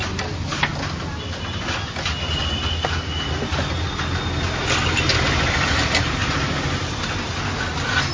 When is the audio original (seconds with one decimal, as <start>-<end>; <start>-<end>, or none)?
0.0-5.1; 7.0-8.1